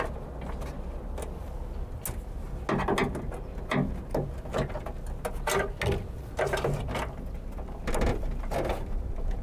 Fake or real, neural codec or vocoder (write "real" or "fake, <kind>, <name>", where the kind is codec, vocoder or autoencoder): real